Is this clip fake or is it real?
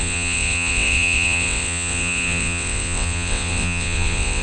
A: fake